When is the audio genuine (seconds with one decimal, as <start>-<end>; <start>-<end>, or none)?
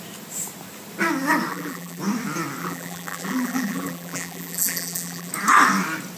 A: 0.0-1.5; 2.0-2.6; 5.3-6.2